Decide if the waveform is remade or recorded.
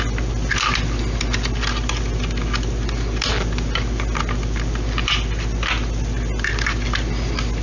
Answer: recorded